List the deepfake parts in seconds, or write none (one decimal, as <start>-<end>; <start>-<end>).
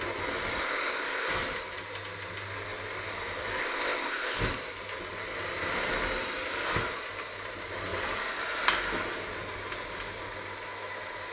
0.6-1.3; 3.6-4.4